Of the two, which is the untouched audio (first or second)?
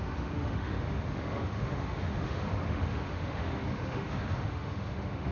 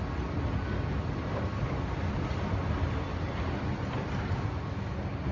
second